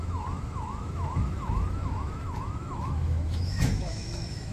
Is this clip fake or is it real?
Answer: fake